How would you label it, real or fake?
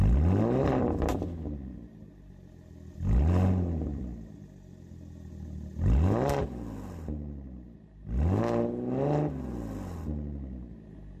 real